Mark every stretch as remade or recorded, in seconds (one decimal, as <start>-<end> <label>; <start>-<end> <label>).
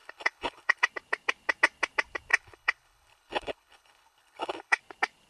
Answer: 0.0-0.9 remade; 0.9-2.3 recorded; 2.3-4.8 remade; 4.8-5.3 recorded